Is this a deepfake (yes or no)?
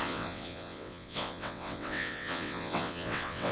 yes